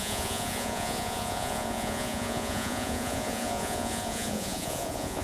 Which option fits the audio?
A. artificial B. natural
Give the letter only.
A